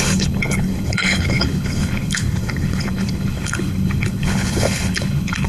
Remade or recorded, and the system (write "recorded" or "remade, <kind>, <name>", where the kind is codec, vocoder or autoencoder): remade, codec, HILCodec